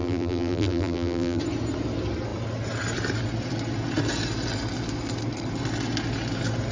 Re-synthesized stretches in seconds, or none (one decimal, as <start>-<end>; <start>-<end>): 0.0-1.4

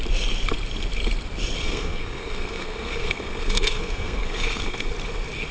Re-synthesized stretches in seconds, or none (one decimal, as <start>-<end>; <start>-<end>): 1.6-4.9

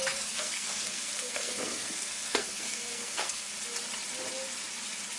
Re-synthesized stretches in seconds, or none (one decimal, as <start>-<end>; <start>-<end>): 0.0-3.5

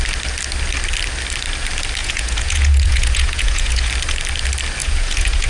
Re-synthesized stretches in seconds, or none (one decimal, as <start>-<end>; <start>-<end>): 2.0-3.9; 4.8-5.5

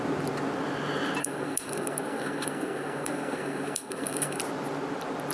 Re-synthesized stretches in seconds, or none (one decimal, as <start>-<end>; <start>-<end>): 1.2-4.4

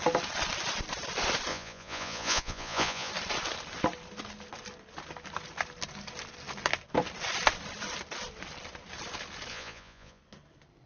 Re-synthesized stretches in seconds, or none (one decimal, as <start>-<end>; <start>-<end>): 1.5-3.1; 9.5-10.2